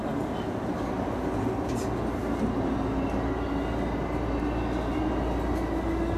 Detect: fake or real real